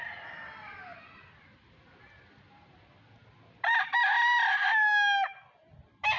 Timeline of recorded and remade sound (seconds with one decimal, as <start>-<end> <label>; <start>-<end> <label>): 0.0-6.2 recorded

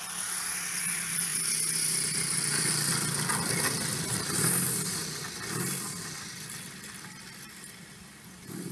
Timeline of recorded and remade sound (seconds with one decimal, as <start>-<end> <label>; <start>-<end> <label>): 0.0-8.7 recorded